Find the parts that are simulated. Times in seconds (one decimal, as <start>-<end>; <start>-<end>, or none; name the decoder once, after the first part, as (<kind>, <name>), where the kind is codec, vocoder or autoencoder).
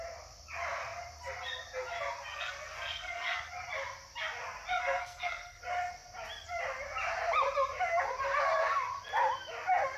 2.3-3.5 (codec, SNAC); 4.8-5.6